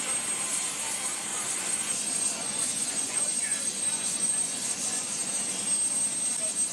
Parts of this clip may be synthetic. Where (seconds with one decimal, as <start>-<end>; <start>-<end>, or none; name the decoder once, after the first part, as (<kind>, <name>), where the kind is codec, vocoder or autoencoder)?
1.3-5.3 (vocoder, Vocos)